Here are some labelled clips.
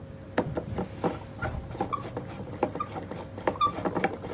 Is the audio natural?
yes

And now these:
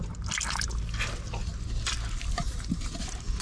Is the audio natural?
yes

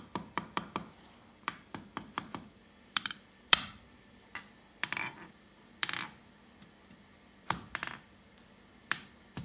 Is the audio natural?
no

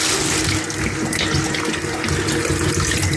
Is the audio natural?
yes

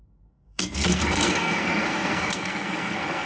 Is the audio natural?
no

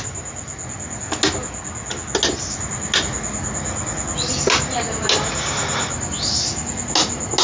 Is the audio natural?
yes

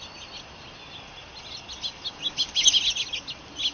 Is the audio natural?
yes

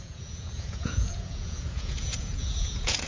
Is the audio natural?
no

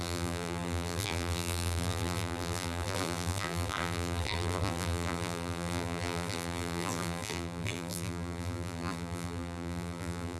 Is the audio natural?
no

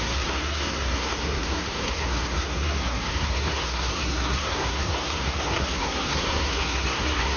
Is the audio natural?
no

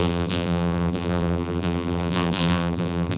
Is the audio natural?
no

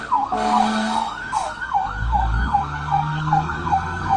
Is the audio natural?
no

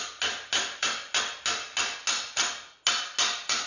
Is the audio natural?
yes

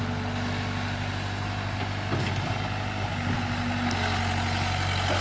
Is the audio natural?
yes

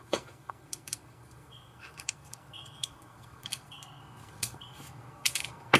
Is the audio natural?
no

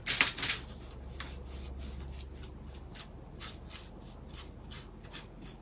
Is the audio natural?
yes